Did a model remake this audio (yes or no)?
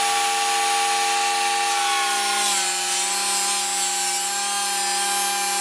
no